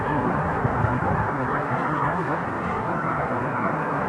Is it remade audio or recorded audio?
remade